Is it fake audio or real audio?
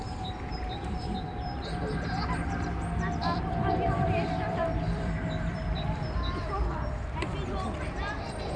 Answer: fake